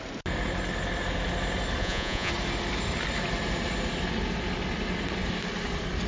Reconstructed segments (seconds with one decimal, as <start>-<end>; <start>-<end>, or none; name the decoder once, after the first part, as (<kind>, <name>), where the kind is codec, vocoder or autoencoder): 1.8-2.3 (vocoder, Vocos)